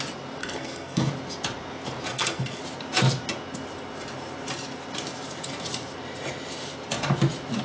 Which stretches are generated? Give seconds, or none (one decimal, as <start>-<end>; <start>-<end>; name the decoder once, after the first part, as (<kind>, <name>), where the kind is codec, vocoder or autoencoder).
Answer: 0.4-1.1 (codec, SNAC); 2.1-2.6